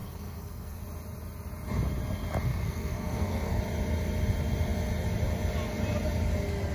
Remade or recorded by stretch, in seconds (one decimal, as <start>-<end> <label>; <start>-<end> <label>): 0.0-0.8 remade; 0.8-2.5 recorded; 2.5-3.6 remade; 3.6-6.7 recorded